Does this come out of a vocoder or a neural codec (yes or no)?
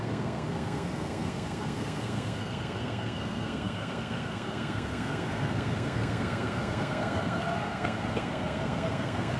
yes